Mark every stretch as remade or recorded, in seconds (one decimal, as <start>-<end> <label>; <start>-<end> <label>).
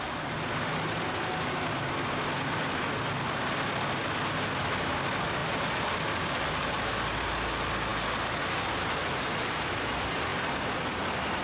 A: 0.0-11.4 recorded